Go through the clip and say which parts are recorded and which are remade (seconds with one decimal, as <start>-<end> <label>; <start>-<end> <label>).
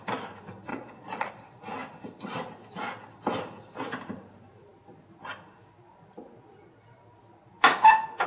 0.0-0.7 recorded; 0.7-1.3 remade; 1.3-8.3 recorded